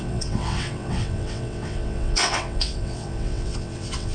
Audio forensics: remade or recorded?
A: remade